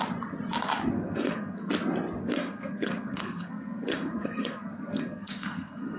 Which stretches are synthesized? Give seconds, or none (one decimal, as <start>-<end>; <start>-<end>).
0.9-1.7; 2.2-6.0

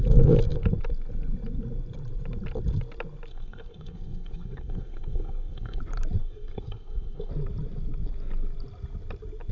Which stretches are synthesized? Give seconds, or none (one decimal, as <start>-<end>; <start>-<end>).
3.3-5.8; 6.2-7.3

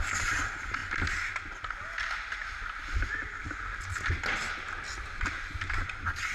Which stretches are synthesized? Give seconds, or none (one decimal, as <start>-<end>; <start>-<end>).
none

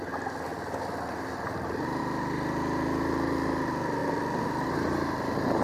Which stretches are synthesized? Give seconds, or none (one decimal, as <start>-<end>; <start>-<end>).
none

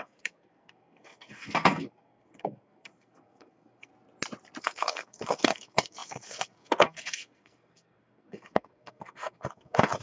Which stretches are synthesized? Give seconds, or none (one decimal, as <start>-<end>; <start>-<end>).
0.0-3.9; 4.6-10.0

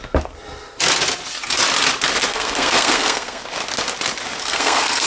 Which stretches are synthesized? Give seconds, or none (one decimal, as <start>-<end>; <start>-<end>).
2.3-3.4; 4.4-5.1